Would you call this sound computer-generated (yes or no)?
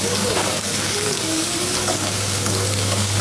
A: yes